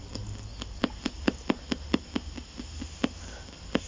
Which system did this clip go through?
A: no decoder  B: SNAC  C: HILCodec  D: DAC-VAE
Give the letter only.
A